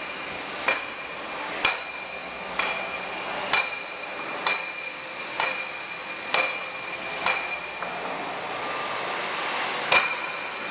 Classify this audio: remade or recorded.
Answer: recorded